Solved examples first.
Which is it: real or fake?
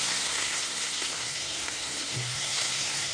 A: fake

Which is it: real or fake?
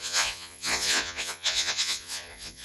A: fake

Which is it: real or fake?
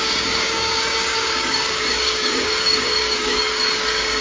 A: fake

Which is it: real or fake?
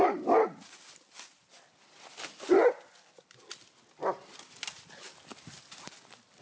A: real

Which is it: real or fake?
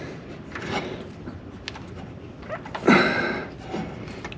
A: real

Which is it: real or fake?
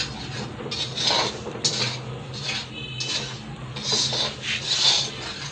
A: real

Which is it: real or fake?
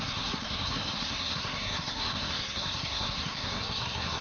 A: fake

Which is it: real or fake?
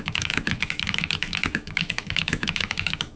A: fake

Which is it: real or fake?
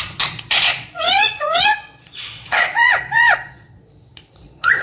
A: fake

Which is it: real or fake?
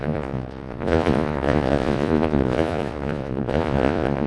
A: fake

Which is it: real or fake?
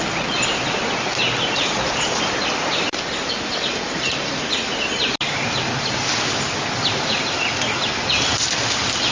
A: real